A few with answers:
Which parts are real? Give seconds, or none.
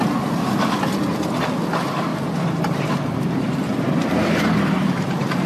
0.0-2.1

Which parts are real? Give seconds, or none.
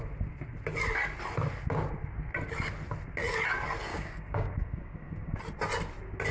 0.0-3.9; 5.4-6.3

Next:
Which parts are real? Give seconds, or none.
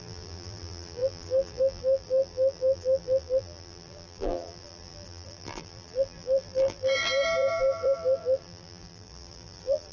none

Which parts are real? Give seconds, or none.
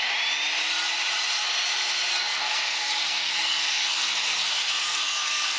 0.0-2.1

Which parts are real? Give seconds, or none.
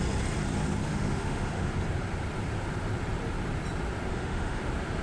0.0-0.8; 1.7-4.1; 4.6-5.0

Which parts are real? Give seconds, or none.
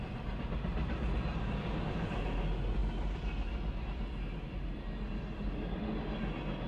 0.0-6.7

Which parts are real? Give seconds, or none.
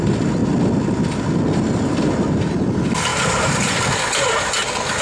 0.0-5.0